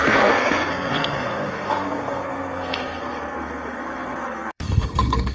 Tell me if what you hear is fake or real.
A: fake